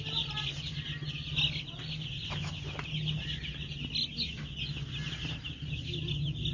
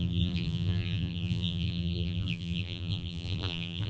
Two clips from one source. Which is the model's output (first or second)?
second